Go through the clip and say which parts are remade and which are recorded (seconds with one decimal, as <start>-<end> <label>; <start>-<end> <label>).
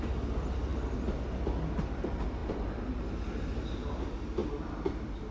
0.0-2.4 recorded; 2.4-3.0 remade; 3.0-4.4 recorded; 4.4-5.3 remade